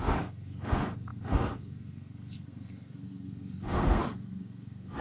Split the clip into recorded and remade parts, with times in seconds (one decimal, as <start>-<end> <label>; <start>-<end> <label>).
0.0-5.0 remade